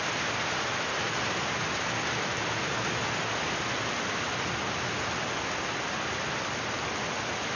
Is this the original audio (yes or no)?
yes